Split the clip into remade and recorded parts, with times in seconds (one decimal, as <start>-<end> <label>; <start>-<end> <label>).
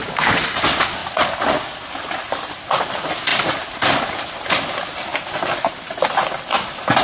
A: 0.0-1.0 recorded; 1.0-2.6 remade; 2.6-3.3 recorded; 3.3-4.0 remade; 4.0-7.0 recorded